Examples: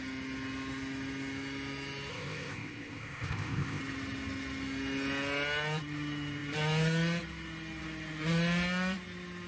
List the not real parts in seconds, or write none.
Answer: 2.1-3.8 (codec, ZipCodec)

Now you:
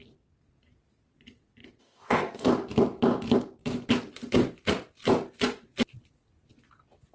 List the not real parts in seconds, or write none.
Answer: 1.8-2.5 (codec, ZipCodec)

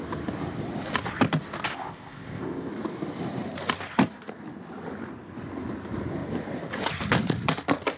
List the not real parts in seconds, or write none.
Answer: 1.7-2.7 (codec, ZipCodec)

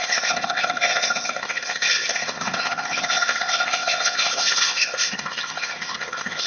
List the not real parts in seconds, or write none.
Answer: 0.0-6.5 (codec, ZipCodec)

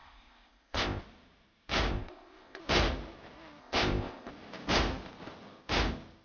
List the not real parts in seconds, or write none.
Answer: 0.0-1.0 (codec, ZipCodec); 1.9-2.6; 3.6-4.3